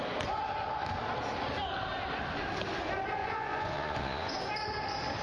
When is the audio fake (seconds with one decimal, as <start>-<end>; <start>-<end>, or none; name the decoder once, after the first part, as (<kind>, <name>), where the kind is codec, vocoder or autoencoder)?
3.2-4.3 (vocoder, Vocos)

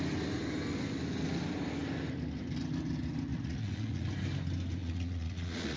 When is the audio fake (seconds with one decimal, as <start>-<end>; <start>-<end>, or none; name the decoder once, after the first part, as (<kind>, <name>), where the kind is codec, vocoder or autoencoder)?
3.3-4.1 (vocoder, Vocos); 4.8-5.8

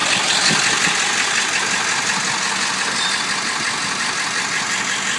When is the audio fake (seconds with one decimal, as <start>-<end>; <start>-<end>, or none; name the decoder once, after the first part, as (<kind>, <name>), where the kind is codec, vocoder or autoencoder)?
none

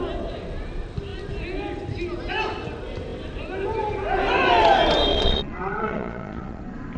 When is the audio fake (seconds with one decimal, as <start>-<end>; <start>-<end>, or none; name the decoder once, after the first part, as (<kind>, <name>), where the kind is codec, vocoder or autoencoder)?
5.1-6.6 (vocoder, Vocos)